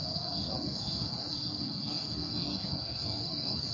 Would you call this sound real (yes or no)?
no